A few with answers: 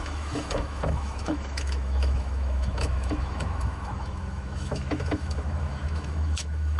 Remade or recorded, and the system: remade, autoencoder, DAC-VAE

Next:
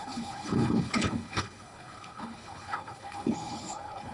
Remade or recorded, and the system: remade, codec, HILCodec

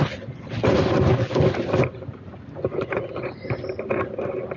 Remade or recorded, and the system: recorded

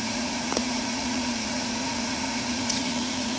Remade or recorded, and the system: remade, vocoder, Vocos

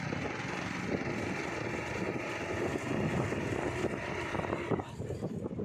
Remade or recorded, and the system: recorded